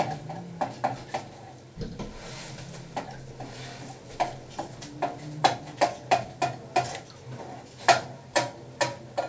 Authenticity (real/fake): real